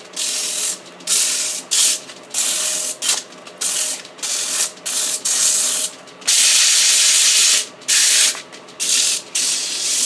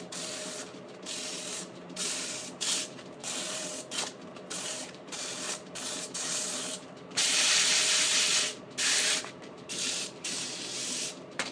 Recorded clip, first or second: first